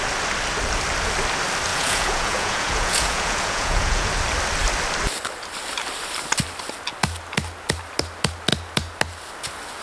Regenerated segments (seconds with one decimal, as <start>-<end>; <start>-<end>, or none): 1.7-4.1